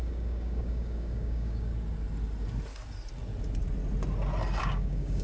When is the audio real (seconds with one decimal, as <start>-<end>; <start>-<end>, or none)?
1.7-4.6